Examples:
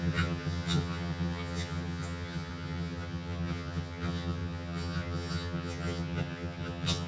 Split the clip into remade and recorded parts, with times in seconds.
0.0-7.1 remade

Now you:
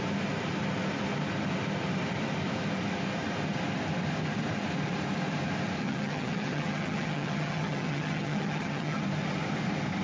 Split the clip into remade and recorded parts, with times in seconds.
0.0-5.8 recorded; 5.8-9.0 remade; 9.0-10.0 recorded

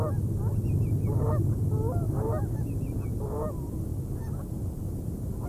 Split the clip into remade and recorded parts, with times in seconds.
0.0-5.5 recorded

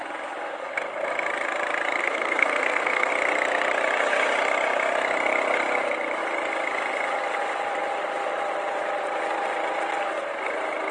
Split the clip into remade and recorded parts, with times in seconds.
0.0-2.0 recorded; 2.0-3.1 remade; 3.1-10.9 recorded

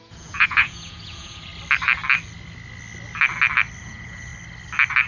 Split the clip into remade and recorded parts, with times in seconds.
0.0-1.5 remade; 1.5-3.8 recorded; 3.8-4.3 remade; 4.3-5.1 recorded

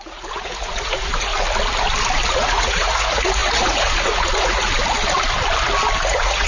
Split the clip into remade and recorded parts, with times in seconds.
0.0-1.3 remade; 1.3-2.3 recorded; 2.3-4.7 remade; 4.7-6.0 recorded; 6.0-6.5 remade

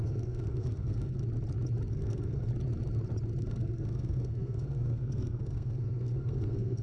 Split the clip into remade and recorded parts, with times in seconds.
0.0-1.2 remade; 1.2-1.9 recorded; 1.9-2.5 remade; 2.5-3.4 recorded; 3.4-6.8 remade

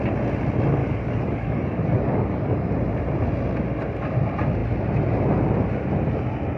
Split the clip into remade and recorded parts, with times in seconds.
0.0-0.8 recorded; 0.8-2.7 remade; 2.7-6.6 recorded